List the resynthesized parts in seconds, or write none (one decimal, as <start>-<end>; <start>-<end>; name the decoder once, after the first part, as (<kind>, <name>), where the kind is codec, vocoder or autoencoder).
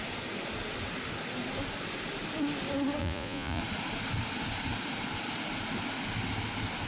3.0-3.6 (vocoder, Vocos)